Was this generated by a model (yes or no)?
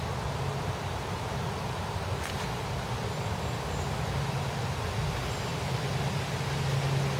no